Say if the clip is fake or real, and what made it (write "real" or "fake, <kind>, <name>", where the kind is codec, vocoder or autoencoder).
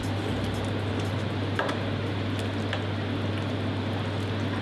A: real